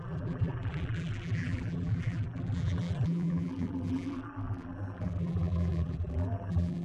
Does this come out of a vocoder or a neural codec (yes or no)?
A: yes